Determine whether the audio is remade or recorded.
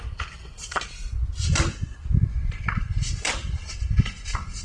recorded